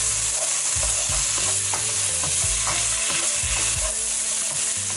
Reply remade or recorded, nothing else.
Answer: recorded